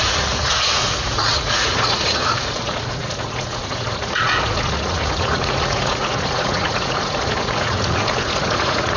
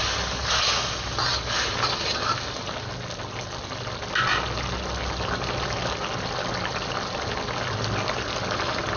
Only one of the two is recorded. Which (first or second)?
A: second